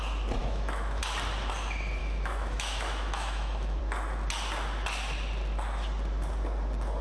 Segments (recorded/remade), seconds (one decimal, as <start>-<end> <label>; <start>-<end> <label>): 0.0-0.4 recorded; 0.4-1.0 remade; 1.0-2.0 recorded; 2.0-3.8 remade; 3.8-7.0 recorded